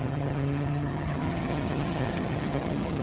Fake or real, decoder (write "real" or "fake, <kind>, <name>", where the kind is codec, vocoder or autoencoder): fake, vocoder, HiFi-GAN